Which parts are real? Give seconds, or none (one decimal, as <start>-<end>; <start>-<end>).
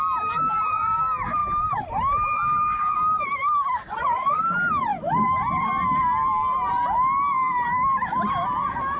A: 0.0-3.9; 4.4-9.0